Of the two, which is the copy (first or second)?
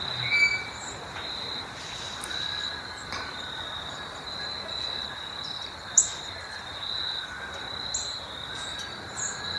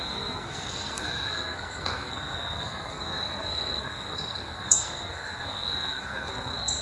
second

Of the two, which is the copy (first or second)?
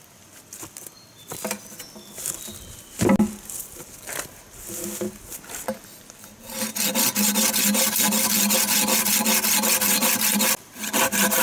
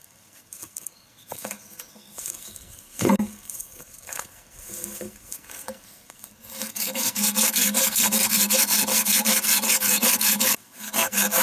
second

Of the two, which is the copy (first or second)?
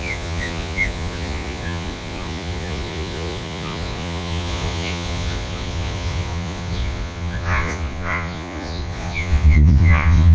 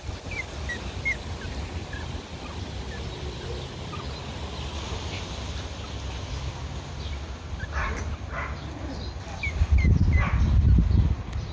first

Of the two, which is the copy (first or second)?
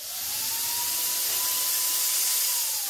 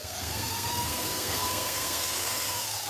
second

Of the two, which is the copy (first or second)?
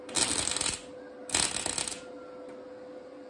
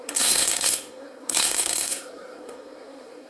second